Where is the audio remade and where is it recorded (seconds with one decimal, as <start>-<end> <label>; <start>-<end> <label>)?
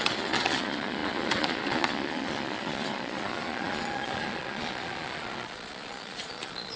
0.0-6.8 remade